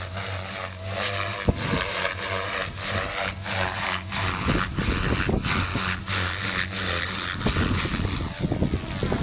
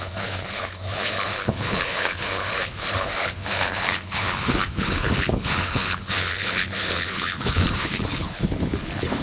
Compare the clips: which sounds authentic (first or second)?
first